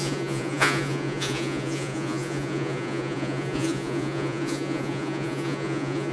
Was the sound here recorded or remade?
remade